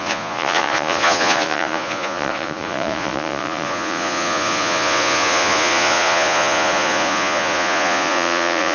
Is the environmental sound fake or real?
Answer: fake